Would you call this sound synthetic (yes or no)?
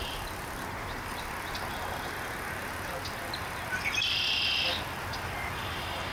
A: no